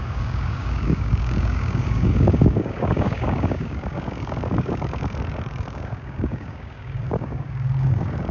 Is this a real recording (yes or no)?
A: no